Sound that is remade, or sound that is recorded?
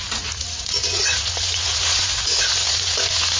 remade